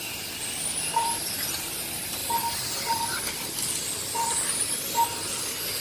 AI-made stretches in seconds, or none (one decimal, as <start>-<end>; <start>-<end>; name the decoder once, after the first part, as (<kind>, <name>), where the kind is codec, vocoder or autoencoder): none